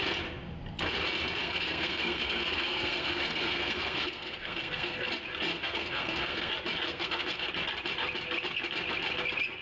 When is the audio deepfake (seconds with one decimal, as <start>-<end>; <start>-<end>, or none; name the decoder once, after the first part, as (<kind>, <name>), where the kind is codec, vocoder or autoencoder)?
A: 1.4-5.1 (codec, SNAC); 5.5-6.5; 6.9-7.5

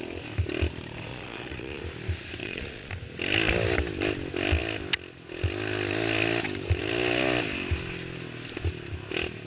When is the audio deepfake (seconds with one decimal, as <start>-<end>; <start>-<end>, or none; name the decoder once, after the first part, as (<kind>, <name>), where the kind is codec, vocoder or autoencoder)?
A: 1.1-1.8 (vocoder, Vocos); 2.4-2.9

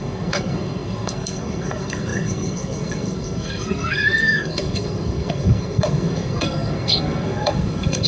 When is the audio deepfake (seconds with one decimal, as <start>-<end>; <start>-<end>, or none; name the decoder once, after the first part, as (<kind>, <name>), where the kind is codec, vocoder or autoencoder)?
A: 0.0-8.1 (codec, SNAC)

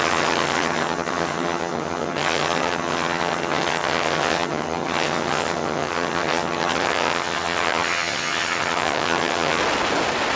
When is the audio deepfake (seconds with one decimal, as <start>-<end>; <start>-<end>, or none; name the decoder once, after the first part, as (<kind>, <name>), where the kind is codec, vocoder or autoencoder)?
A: 0.0-9.6 (vocoder, HiFi-GAN)